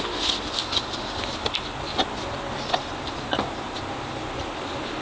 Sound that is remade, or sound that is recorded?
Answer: recorded